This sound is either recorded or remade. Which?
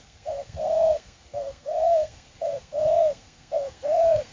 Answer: remade